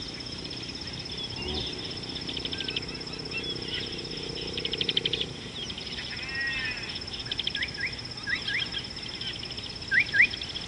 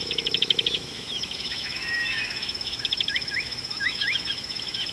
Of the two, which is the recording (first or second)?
first